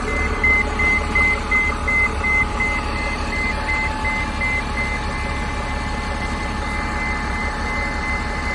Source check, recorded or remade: recorded